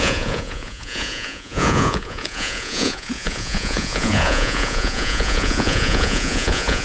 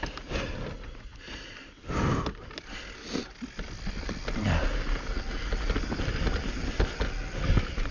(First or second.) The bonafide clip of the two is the second